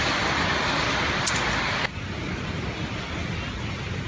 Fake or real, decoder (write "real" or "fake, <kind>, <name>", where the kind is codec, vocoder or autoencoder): real